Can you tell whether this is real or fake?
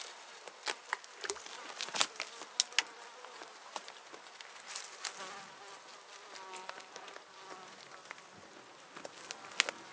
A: real